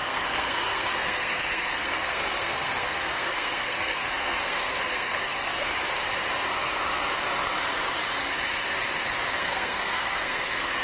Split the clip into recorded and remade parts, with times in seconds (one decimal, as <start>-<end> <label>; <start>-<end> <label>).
0.0-5.7 remade; 5.7-9.3 recorded; 9.3-10.8 remade